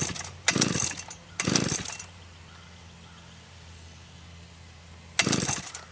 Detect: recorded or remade recorded